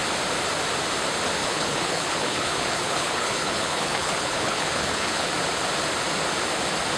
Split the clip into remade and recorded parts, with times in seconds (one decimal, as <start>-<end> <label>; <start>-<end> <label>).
0.0-1.4 recorded; 1.4-5.3 remade; 5.3-7.0 recorded